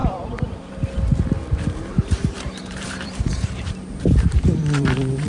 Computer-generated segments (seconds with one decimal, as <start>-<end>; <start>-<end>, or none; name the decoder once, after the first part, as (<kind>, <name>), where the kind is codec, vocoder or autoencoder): 0.0-0.7 (vocoder, BigVGAN v2); 1.9-5.3